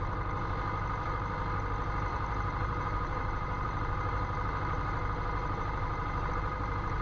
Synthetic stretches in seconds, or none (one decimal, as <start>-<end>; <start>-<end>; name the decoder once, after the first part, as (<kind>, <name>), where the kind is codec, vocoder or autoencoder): 2.1-6.3 (vocoder, BigVGAN v2)